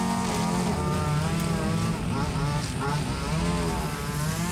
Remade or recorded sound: recorded